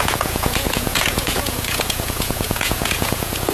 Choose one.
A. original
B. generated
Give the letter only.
B